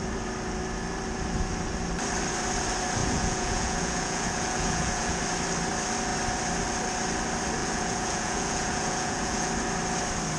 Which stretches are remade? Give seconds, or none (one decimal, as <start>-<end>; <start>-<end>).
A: 3.0-5.2; 7.6-9.5